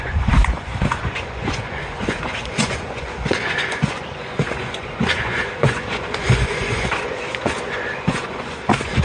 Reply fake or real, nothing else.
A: fake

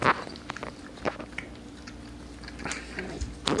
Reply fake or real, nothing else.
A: real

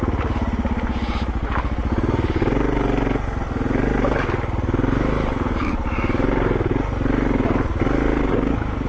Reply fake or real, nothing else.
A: real